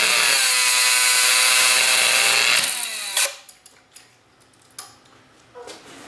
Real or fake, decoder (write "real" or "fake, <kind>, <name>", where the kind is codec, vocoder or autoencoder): real